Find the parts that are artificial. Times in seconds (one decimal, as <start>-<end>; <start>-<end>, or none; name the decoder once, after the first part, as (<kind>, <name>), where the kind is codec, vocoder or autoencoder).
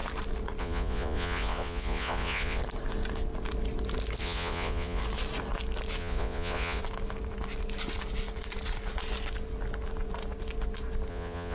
0.6-2.6 (vocoder, Vocos); 4.2-5.0; 6.0-6.8; 11.1-11.5